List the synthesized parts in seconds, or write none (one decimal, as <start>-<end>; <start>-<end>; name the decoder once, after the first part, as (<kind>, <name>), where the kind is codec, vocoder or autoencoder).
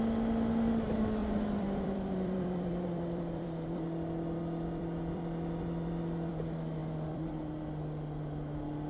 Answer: 1.2-6.3 (vocoder, BigVGAN v2); 6.8-7.5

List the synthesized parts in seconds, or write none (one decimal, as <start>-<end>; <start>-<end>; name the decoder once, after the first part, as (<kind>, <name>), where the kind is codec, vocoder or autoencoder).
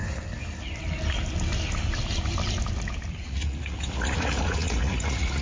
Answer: 3.2-5.4 (vocoder, Vocos)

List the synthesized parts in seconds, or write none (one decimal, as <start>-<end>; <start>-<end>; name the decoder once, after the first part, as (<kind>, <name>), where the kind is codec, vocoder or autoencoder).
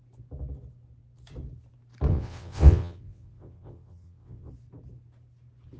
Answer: 2.1-4.5 (vocoder, WaveNeXt)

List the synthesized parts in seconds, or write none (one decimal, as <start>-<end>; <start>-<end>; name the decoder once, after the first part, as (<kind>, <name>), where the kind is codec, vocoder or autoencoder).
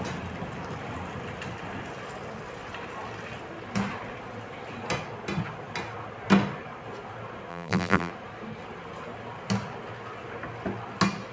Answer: 7.5-8.1 (vocoder, BigVGAN v2)